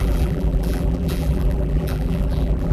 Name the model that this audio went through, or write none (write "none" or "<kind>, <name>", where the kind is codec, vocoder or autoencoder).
vocoder, BigVGAN v2